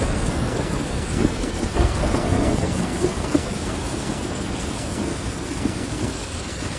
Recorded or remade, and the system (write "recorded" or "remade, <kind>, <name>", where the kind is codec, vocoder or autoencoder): remade, codec, SNAC